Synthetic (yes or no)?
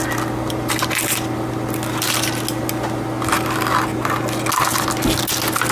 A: no